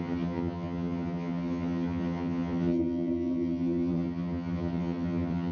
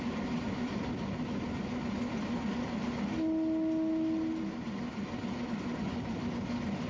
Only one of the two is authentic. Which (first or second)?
second